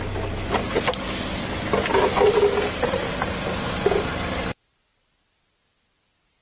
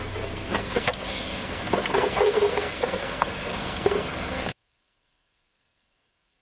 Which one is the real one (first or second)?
first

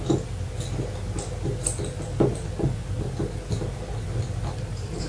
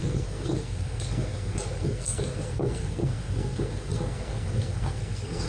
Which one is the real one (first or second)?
first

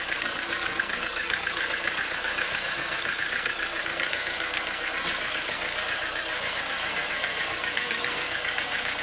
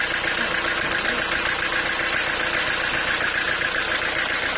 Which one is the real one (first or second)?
second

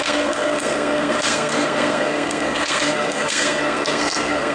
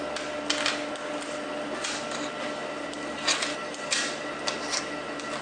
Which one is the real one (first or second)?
second